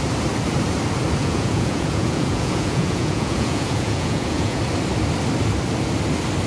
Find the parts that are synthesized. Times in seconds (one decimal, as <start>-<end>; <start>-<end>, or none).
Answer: 1.2-4.6